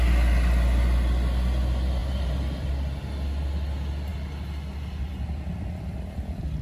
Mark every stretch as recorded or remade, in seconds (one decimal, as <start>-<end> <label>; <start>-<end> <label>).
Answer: 0.0-2.0 recorded; 2.0-2.7 remade; 2.7-6.6 recorded